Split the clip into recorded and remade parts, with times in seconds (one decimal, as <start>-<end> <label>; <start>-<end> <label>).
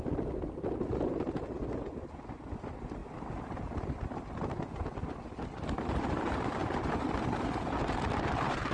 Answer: 0.0-8.7 recorded